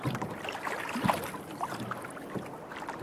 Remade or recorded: recorded